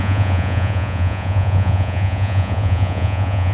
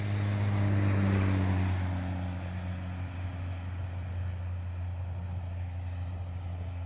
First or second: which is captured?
second